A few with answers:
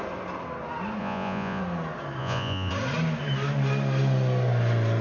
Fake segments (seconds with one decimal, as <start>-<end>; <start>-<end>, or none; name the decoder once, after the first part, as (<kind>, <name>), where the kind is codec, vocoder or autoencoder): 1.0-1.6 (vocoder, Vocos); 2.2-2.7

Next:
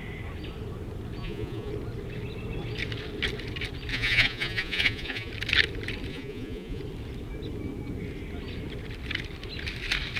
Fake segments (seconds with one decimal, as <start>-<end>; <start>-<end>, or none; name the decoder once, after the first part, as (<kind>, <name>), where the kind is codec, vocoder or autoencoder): 1.2-1.7 (vocoder, Vocos); 3.9-5.3; 6.1-6.8

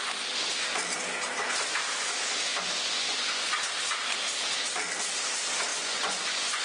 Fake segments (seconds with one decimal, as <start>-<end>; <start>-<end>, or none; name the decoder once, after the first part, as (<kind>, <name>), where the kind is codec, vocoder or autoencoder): 2.5-3.5 (vocoder, Vocos); 5.7-6.6

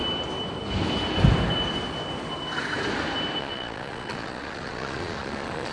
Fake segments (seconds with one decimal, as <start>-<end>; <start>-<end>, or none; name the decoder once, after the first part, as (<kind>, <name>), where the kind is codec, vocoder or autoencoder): 3.4-5.7 (vocoder, Vocos)

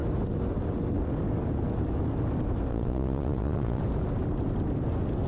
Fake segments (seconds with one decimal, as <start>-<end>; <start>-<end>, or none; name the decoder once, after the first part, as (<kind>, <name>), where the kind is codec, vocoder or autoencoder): 2.7-3.8 (vocoder, Vocos)

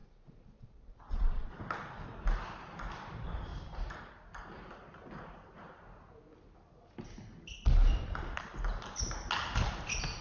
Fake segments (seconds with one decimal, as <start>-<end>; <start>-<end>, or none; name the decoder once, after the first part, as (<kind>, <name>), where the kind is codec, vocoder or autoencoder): 0.0-1.5 (vocoder, Vocos)